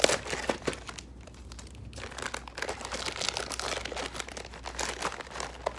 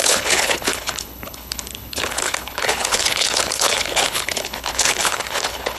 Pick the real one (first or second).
first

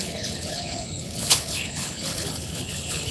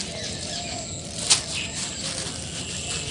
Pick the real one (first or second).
second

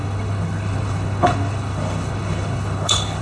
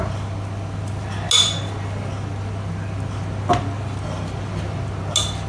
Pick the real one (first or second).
second